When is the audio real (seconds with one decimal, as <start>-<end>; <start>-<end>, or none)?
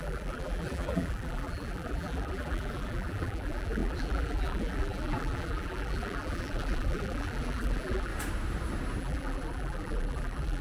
8.1-9.0